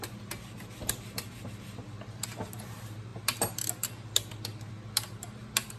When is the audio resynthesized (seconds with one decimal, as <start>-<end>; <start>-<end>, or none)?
none